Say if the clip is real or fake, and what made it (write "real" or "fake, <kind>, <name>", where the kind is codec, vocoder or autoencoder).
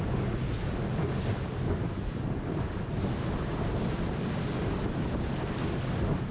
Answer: real